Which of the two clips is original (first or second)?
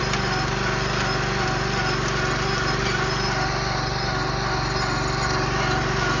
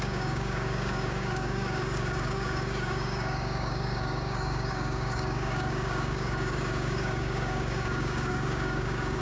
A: first